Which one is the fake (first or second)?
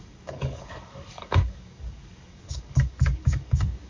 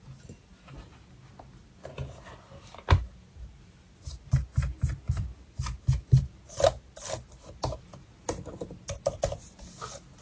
first